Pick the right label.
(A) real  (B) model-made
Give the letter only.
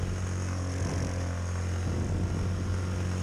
A